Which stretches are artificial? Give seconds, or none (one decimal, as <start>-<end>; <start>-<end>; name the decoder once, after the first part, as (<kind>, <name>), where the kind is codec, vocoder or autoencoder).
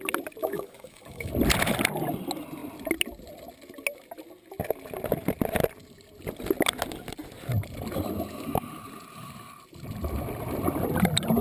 0.4-1.3 (autoencoder, DAC-VAE)